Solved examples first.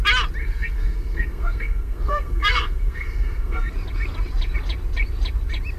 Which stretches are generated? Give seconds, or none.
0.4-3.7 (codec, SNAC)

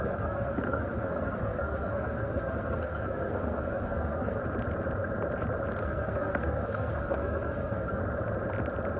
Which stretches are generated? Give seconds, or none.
0.0-4.4 (codec, SNAC); 5.8-8.0